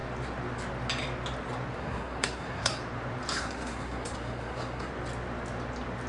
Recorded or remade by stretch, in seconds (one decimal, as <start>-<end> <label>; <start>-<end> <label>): 0.0-1.8 recorded; 1.8-2.8 remade; 2.8-3.3 recorded; 3.3-4.9 remade; 4.9-6.1 recorded